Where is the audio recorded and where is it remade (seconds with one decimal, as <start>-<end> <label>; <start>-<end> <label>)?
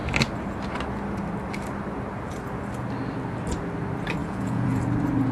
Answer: 0.0-4.2 recorded; 4.2-4.8 remade; 4.8-5.3 recorded